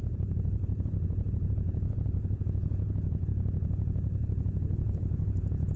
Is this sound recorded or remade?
remade